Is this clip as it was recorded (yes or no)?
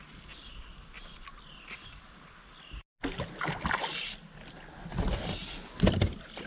yes